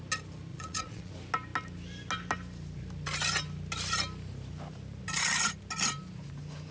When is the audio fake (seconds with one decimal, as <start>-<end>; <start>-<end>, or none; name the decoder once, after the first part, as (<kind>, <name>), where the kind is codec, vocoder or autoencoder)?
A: 0.5-1.1 (vocoder, Vocos)